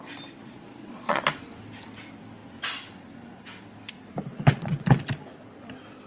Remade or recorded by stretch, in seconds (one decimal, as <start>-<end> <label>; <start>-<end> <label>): 0.0-0.4 recorded; 0.4-1.2 remade; 1.2-4.3 recorded; 4.3-5.0 remade; 5.0-6.1 recorded